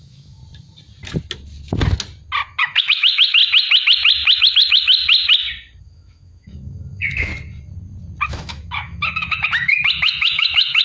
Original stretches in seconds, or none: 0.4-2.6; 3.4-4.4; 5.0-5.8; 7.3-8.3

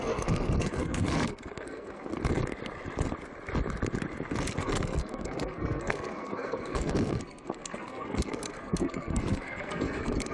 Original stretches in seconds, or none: 2.1-4.4

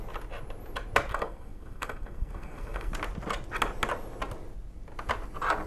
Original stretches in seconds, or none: 0.0-1.1; 2.9-5.7

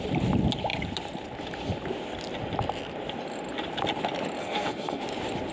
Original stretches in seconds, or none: 0.0-4.4; 5.0-5.5